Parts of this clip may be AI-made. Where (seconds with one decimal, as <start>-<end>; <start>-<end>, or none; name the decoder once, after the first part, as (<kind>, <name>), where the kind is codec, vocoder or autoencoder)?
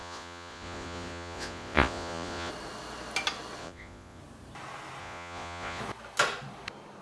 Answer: 0.0-2.5 (vocoder, Vocos); 3.6-4.2; 5.0-5.8